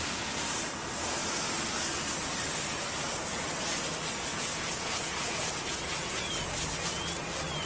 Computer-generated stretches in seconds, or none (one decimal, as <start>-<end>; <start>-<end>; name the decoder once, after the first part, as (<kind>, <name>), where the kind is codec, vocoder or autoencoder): 4.3-6.3 (vocoder, Vocos)